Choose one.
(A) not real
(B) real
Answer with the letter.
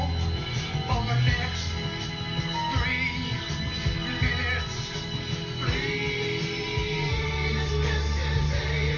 B